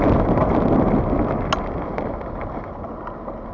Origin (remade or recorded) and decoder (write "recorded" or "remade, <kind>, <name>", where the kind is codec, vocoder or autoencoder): recorded